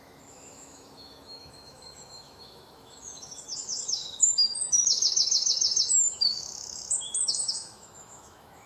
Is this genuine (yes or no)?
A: no